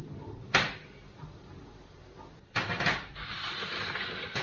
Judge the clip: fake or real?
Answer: real